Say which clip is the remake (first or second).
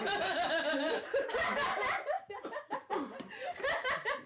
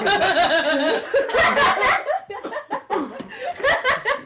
first